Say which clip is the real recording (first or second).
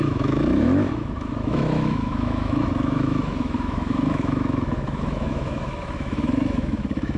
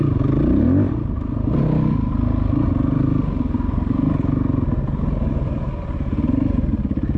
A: second